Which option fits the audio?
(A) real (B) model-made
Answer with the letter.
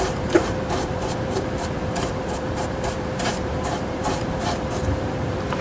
B